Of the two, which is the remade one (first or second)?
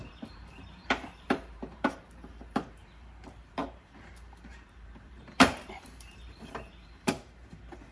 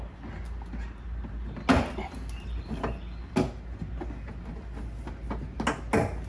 first